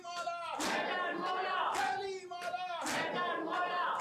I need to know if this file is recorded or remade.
recorded